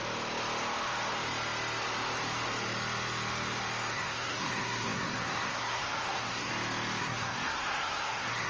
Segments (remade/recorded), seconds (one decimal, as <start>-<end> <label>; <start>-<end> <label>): 0.0-3.9 recorded; 3.9-6.5 remade; 6.5-7.0 recorded; 7.0-8.5 remade